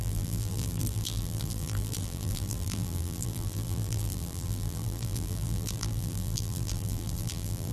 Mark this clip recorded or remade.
remade